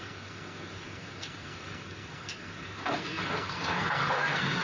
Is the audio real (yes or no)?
no